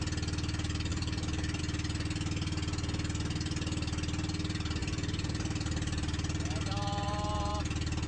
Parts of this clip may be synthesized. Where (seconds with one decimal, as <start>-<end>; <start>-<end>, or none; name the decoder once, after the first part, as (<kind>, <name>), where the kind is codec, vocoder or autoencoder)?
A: 0.9-1.6 (vocoder, BigVGAN v2); 4.8-7.5